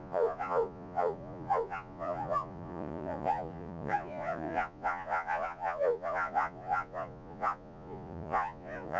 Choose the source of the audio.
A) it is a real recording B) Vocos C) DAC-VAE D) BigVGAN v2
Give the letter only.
B